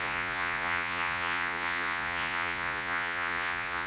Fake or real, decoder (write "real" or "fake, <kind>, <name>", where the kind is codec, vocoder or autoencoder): fake, vocoder, Vocos